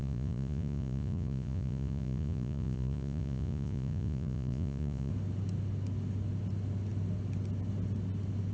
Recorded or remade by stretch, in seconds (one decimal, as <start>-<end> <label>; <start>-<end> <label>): 0.0-5.1 remade; 5.1-8.5 recorded